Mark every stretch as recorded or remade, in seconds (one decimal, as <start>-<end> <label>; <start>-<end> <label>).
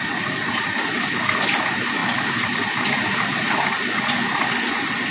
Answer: 0.0-2.0 recorded; 2.0-5.1 remade